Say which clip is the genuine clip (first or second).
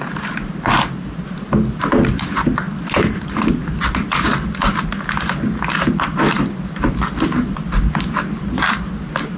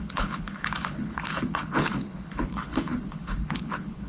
first